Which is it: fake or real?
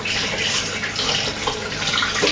real